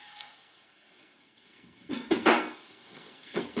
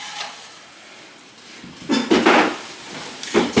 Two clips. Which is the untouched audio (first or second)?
second